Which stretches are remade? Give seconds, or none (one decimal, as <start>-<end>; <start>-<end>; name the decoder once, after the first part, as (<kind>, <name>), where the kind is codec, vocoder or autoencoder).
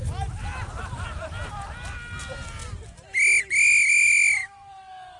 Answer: 4.4-5.2 (autoencoder, DAC-VAE)